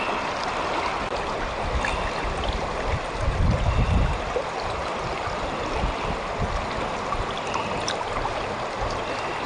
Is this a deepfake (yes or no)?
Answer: no